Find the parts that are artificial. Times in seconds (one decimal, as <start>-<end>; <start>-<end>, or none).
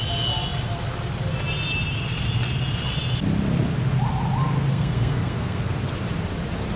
4.7-5.6